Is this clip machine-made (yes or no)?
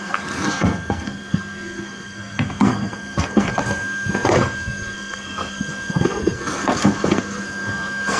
yes